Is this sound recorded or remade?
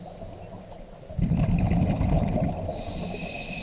recorded